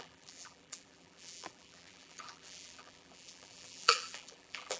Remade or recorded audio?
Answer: remade